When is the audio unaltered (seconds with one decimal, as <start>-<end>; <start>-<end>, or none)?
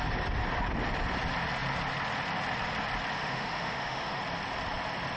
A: 0.0-3.2; 4.2-5.2